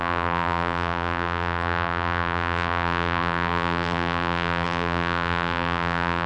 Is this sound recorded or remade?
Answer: remade